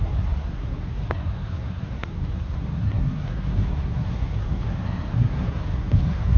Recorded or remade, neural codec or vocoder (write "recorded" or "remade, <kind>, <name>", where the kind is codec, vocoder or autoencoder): remade, codec, SNAC